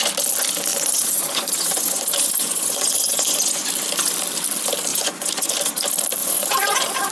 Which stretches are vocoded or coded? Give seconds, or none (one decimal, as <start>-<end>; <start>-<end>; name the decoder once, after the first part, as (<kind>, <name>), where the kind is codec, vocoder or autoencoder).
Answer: 0.7-3.7 (vocoder, Vocos); 4.9-5.5; 6.2-7.1